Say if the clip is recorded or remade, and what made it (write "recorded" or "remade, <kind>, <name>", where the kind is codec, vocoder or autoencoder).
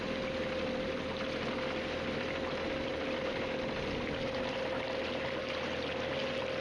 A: recorded